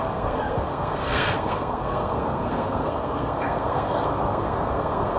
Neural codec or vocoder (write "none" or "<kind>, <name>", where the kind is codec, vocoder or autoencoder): codec, SNAC